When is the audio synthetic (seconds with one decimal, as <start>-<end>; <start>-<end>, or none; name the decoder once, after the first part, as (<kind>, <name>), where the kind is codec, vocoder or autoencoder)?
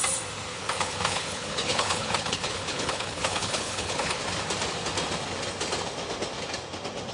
0.5-4.2 (codec, HILCodec)